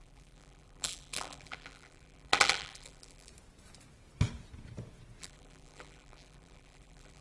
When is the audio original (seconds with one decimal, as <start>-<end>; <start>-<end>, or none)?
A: 3.3-5.2